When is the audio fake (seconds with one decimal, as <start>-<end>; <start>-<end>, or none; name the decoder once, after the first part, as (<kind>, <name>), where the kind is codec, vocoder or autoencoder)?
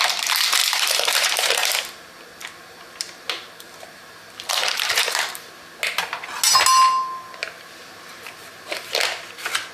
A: 0.6-5.6 (vocoder, BigVGAN v2); 7.4-8.9